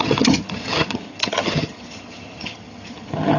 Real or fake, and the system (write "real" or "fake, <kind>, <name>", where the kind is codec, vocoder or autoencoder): fake, vocoder, HiFi-GAN